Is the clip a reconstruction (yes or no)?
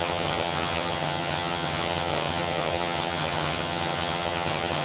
yes